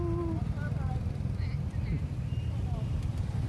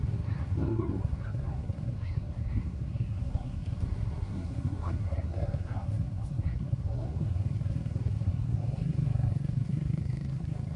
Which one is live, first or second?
first